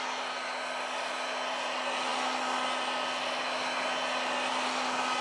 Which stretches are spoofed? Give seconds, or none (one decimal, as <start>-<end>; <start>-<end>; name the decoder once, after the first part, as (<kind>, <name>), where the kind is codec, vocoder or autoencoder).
none